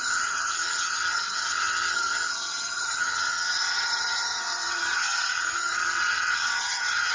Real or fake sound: fake